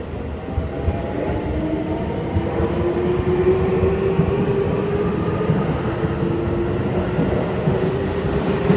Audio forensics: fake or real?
real